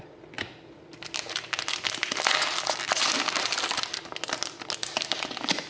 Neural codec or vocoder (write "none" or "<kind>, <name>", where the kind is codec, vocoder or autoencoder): none